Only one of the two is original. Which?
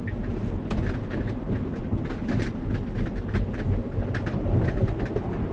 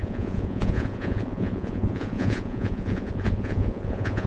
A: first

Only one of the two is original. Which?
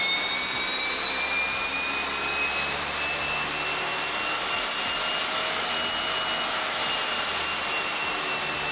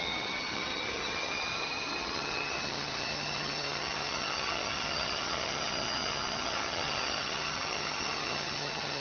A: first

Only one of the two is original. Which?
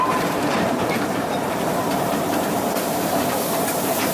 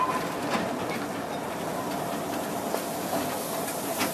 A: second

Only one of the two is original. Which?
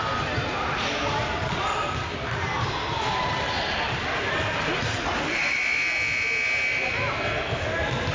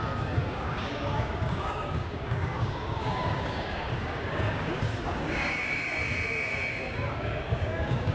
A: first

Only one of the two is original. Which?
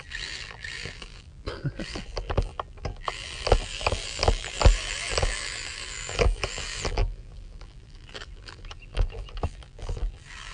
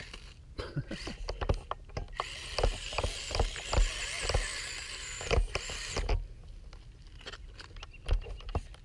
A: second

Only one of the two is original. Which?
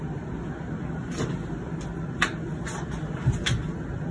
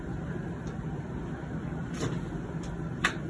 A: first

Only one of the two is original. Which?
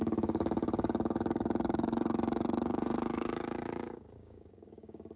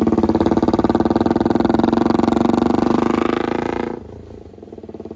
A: second